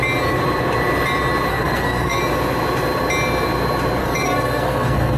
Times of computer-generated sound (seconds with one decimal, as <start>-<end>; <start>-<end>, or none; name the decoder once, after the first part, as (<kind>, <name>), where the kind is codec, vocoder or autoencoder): 1.5-2.2 (codec, SNAC); 4.0-5.2